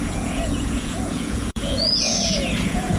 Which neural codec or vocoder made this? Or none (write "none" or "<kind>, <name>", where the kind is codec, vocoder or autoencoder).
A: vocoder, Vocos